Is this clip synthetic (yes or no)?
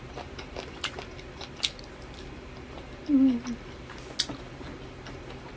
no